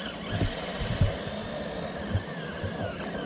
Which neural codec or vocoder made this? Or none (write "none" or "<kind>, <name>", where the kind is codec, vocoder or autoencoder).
none